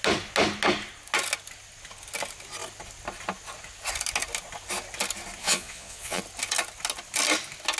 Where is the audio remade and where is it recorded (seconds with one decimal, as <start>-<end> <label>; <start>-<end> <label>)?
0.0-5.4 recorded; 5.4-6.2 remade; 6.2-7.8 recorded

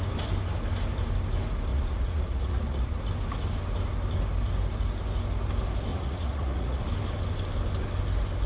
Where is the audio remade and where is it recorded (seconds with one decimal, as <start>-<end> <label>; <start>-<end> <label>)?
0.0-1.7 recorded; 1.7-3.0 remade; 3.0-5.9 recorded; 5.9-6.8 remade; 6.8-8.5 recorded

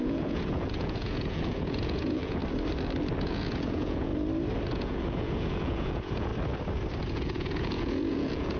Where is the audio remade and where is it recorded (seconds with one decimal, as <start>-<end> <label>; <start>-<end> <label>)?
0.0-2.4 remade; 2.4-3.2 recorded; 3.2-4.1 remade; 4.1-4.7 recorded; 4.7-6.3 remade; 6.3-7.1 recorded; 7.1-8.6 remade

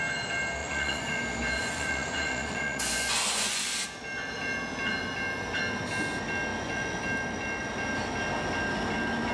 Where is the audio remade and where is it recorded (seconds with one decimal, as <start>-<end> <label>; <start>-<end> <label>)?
0.0-0.6 recorded; 0.6-1.2 remade; 1.2-1.6 recorded; 1.6-3.6 remade; 3.6-6.5 recorded; 6.5-7.0 remade; 7.0-9.3 recorded

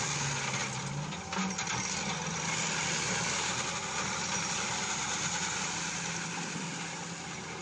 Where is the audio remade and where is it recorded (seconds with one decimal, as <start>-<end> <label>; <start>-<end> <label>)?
0.0-7.6 recorded